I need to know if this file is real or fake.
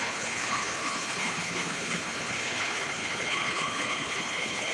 fake